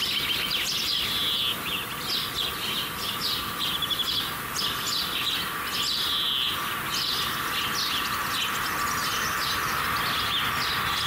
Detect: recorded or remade recorded